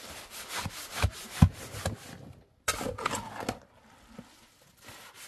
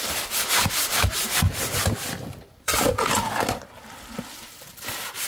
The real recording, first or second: first